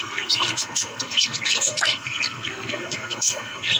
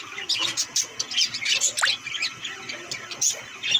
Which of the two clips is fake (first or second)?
first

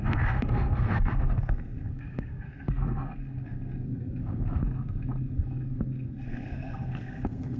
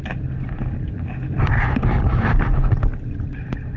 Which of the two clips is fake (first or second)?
first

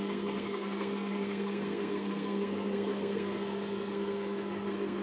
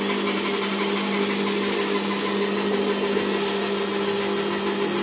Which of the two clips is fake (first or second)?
first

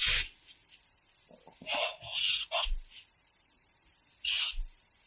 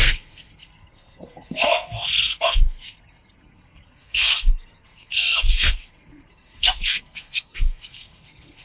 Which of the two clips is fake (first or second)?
second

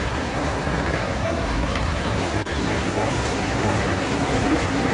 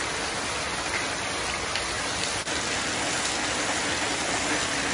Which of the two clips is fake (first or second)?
first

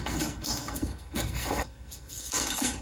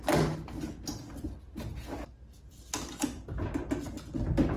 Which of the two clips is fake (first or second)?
first